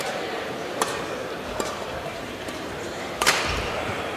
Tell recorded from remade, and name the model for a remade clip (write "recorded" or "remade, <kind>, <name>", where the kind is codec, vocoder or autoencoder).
remade, vocoder, BigVGAN v2